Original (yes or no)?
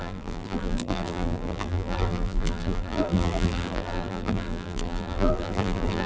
no